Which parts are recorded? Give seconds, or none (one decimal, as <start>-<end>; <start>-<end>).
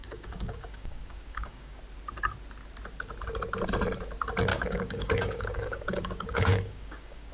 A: 1.8-4.5